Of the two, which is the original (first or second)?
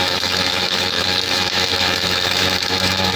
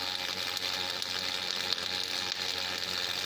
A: second